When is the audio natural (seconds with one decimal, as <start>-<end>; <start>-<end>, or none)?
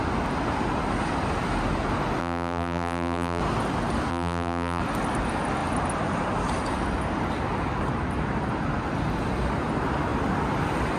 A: 0.0-2.2; 3.4-4.1; 4.8-11.0